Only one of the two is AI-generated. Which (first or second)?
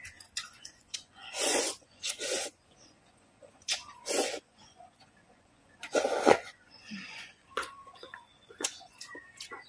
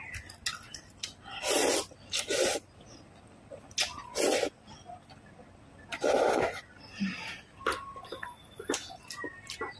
first